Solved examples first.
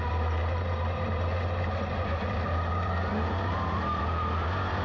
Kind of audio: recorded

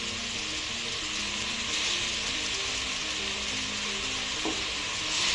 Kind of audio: recorded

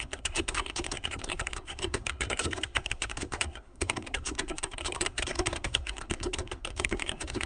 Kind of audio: remade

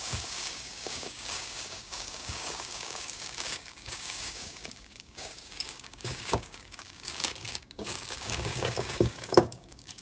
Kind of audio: remade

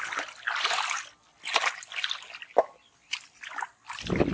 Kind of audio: recorded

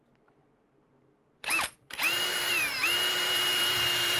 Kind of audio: remade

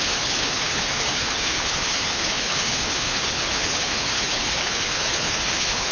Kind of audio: remade